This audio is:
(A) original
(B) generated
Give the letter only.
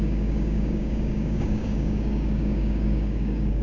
B